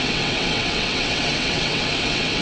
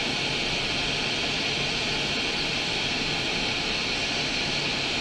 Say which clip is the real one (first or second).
second